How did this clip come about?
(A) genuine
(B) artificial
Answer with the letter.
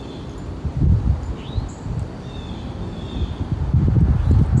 A